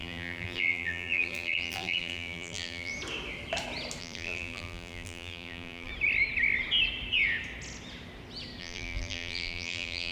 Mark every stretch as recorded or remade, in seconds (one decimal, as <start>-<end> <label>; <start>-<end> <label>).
0.0-2.9 remade; 2.9-4.0 recorded; 4.0-5.9 remade; 5.9-8.6 recorded; 8.6-10.1 remade